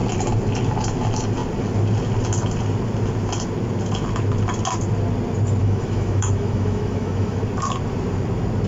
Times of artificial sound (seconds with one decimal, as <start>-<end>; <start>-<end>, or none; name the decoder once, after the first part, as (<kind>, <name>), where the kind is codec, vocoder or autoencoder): 5.6-7.4 (autoencoder, DAC-VAE)

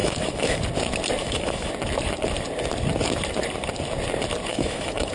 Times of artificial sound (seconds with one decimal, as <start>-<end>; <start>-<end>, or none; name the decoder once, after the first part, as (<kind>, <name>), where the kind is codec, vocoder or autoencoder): 0.0-0.6 (autoencoder, DAC-VAE); 1.2-1.7; 4.5-5.1

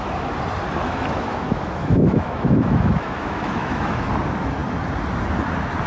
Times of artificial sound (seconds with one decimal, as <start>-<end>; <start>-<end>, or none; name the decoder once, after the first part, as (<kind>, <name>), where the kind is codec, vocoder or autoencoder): 0.8-4.1 (autoencoder, DAC-VAE)